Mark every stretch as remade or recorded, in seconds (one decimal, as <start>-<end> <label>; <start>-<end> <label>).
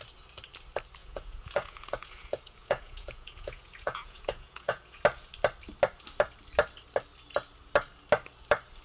0.0-1.0 recorded; 1.0-5.0 remade; 5.0-8.8 recorded